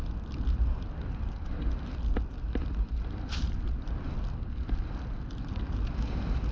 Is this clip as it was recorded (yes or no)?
yes